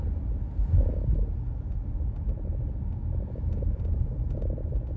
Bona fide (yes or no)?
yes